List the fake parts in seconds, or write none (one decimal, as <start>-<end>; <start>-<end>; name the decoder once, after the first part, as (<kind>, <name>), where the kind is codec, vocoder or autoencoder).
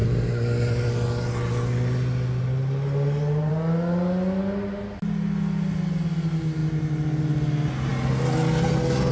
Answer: none